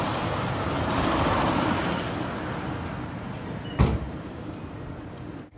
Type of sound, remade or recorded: remade